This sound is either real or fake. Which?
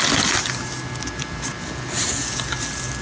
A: real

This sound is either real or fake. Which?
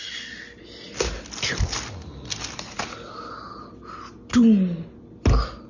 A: real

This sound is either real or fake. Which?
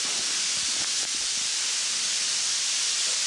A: real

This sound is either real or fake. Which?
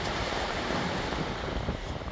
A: fake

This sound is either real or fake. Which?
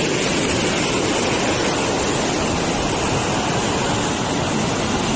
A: real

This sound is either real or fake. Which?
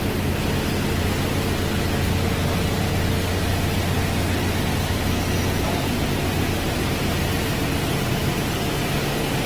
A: real